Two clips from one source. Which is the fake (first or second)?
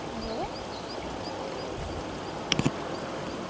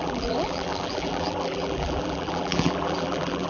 second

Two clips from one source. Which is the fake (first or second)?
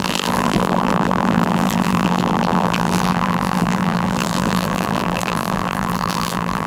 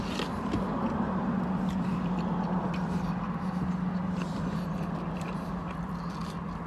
first